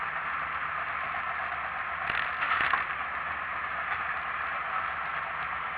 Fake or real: real